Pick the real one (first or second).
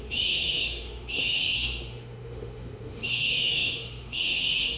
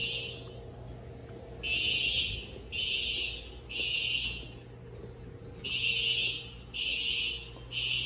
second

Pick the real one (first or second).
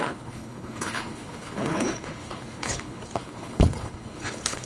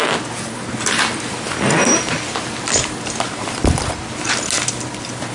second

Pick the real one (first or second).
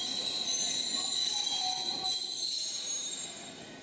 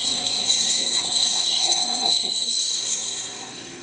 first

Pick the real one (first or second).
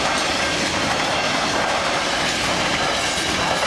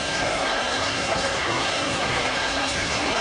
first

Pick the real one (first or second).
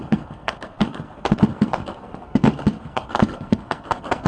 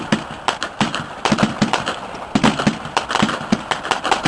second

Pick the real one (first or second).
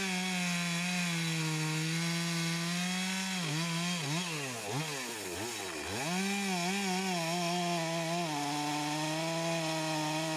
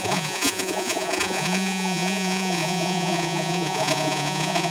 first